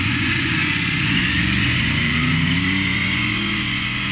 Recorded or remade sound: remade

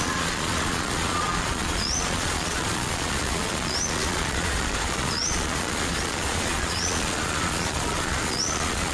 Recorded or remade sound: remade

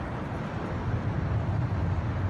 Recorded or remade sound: recorded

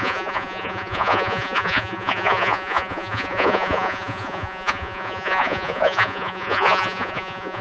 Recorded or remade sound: remade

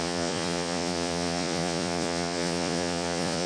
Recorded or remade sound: remade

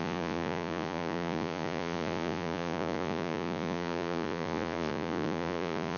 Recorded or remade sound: remade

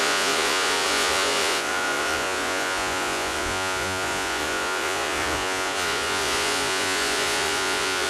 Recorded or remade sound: remade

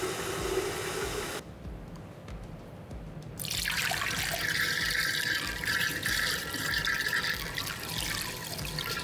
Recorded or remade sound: recorded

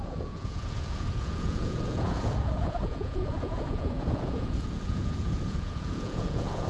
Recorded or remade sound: remade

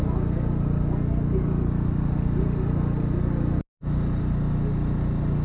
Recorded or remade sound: recorded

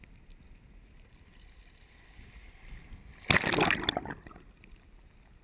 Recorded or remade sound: recorded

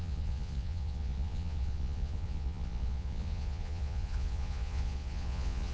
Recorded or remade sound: remade